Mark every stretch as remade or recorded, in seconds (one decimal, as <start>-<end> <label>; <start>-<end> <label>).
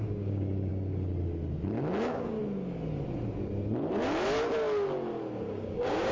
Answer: 0.0-0.7 remade; 0.7-2.0 recorded; 2.0-2.4 remade; 2.4-5.5 recorded; 5.5-6.1 remade